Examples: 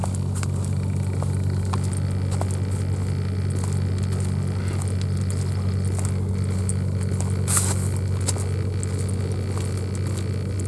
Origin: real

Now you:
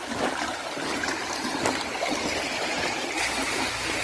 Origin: real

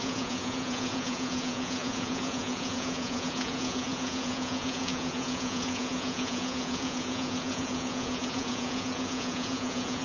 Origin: fake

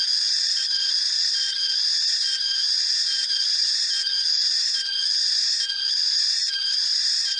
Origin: fake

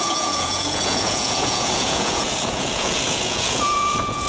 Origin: fake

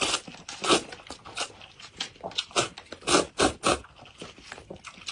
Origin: real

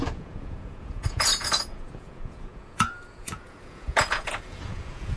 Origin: fake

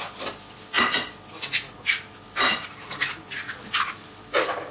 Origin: real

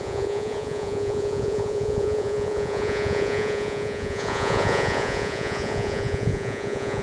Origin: fake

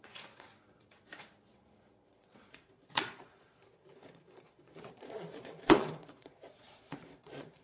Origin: fake